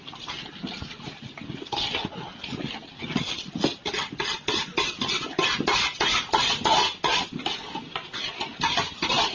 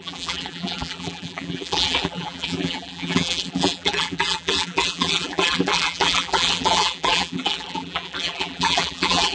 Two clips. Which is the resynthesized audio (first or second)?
second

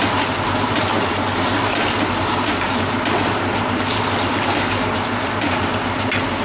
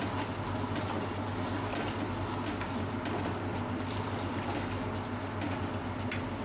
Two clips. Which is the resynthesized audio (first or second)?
first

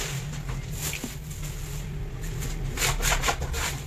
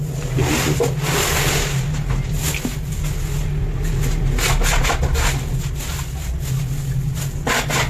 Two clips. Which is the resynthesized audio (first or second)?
first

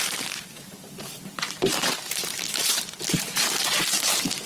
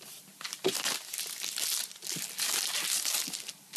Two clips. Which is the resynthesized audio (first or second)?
first